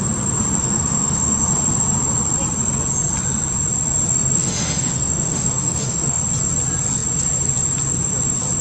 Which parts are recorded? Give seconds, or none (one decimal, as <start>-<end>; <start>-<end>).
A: 0.0-0.6; 1.5-4.1; 6.2-8.6